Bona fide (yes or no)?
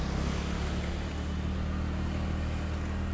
yes